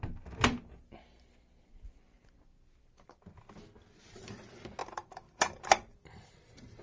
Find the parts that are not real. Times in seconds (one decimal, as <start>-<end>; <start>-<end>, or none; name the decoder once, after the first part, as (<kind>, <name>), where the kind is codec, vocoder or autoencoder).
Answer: 4.8-6.8 (vocoder, BigVGAN v2)